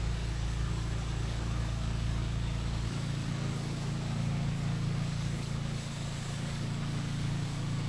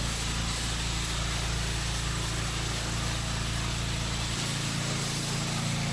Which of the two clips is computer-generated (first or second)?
first